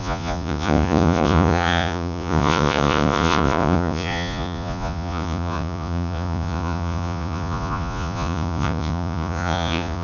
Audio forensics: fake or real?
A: fake